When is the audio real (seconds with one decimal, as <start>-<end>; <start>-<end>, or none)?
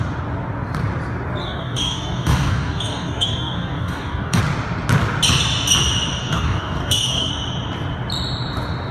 0.0-1.4; 4.4-6.2; 7.3-8.9